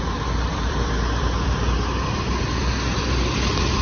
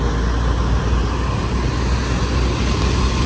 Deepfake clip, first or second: first